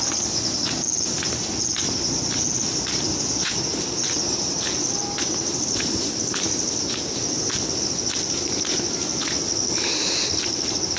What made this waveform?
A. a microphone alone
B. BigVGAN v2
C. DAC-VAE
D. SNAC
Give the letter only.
A